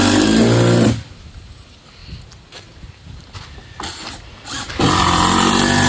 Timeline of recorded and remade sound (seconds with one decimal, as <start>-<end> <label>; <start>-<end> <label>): 0.0-5.9 recorded